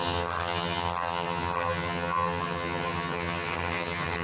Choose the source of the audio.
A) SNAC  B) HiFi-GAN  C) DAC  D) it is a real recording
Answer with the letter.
B